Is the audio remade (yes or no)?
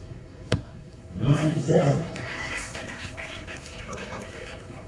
yes